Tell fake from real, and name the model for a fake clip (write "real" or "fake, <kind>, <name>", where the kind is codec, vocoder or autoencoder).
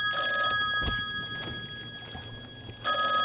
real